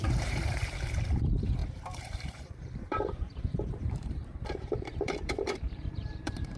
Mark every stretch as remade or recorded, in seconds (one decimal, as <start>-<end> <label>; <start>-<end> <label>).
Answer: 0.0-6.6 remade